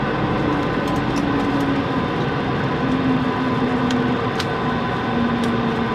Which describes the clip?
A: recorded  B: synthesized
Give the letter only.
A